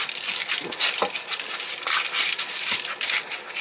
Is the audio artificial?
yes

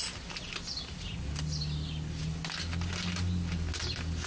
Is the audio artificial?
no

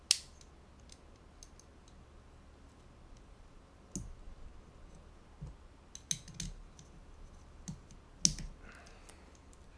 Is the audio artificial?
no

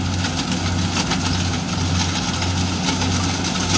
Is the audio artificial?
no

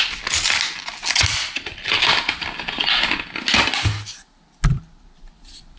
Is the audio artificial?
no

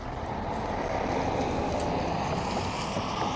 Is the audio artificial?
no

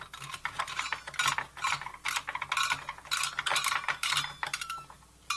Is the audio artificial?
no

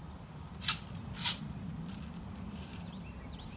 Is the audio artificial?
yes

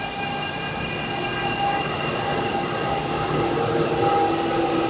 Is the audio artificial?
no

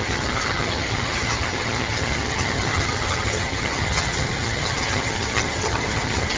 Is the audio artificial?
yes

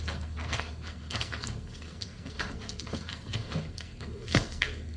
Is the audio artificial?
yes